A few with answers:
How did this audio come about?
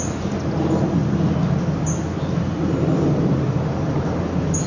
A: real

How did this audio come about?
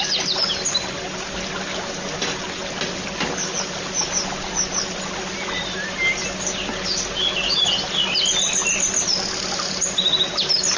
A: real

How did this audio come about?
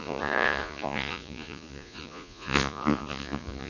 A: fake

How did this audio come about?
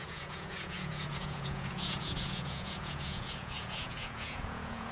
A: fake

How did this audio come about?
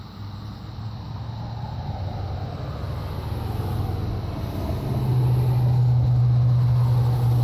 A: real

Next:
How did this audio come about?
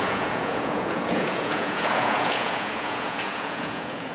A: fake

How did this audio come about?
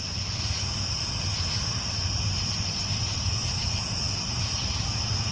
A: real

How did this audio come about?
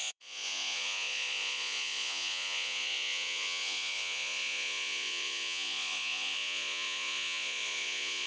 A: fake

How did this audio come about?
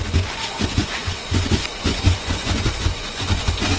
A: fake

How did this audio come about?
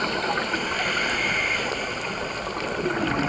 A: real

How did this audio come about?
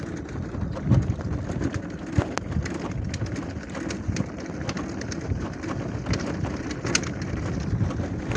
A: real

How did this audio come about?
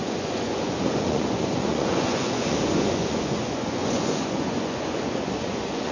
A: fake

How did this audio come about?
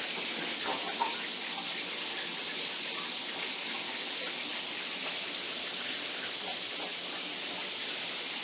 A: real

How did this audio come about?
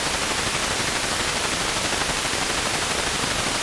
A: real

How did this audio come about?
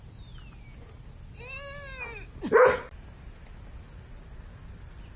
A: real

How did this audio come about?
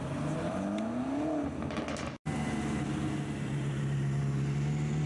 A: real